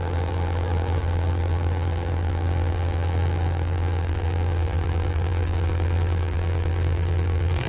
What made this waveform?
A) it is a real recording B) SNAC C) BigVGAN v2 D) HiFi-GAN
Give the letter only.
C